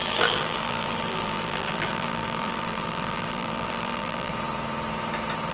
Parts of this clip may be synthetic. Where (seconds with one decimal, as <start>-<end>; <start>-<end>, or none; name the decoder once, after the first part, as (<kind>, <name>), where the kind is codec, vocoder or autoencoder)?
0.0-4.3 (vocoder, BigVGAN v2)